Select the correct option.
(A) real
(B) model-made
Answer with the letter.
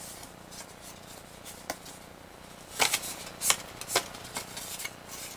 A